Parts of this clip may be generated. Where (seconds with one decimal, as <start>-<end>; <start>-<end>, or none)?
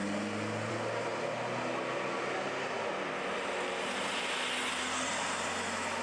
none